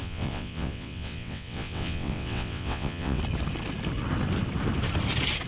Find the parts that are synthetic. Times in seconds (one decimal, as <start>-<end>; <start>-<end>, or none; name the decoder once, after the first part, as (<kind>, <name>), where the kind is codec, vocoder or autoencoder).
0.0-3.2 (vocoder, WaveNeXt)